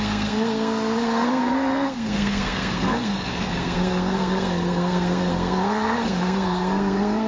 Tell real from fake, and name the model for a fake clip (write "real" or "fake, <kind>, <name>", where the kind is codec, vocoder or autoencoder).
fake, codec, SNAC